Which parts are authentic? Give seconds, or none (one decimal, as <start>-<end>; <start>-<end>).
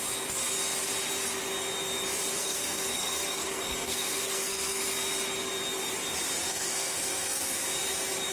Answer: 0.0-2.4; 4.8-6.5; 7.4-8.3